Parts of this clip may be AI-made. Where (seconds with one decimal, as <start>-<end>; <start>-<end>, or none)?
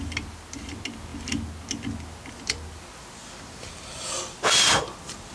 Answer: none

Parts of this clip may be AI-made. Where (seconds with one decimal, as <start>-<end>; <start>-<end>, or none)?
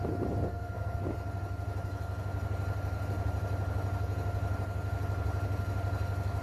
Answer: 0.5-1.0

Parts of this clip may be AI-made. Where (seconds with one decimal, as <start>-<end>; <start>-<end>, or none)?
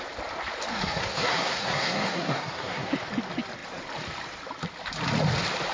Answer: 0.7-2.9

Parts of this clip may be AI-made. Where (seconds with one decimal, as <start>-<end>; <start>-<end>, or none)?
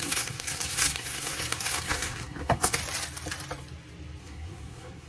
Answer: 0.0-2.8; 4.2-5.1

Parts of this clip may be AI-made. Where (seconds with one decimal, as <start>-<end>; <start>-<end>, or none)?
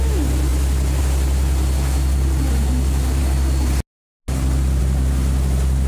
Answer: none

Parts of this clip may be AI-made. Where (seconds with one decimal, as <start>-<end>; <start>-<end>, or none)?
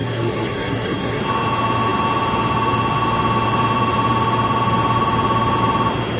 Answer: 0.0-1.2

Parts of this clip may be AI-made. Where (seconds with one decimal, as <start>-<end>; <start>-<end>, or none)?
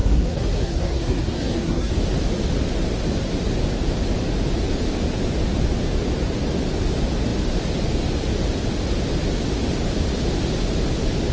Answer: 0.0-1.9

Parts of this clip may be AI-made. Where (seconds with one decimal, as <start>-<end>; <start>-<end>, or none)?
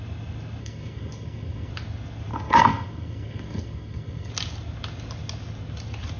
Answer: 0.6-1.7; 2.3-4.3